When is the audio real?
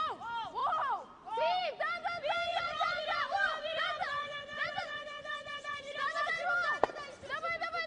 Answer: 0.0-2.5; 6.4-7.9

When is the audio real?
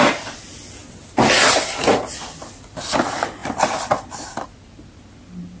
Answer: 0.0-3.4; 4.1-5.6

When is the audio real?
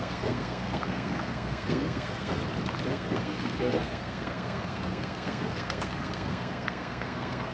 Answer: 2.4-2.9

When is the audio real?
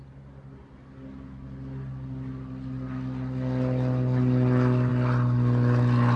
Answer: 0.0-6.2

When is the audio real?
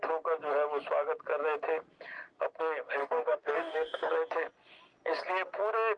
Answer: 0.0-3.0; 4.1-6.0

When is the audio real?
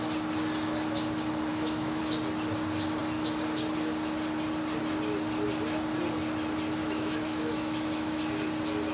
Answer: 0.0-1.5; 2.0-6.8; 8.2-8.9